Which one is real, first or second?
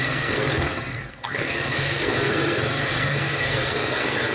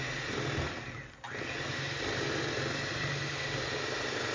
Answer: second